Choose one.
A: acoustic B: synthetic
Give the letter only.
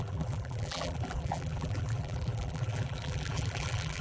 B